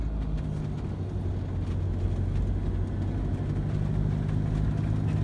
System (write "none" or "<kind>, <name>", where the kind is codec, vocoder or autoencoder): none